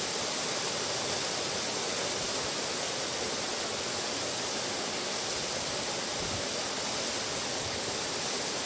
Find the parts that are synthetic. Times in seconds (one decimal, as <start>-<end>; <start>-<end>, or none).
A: 7.5-8.0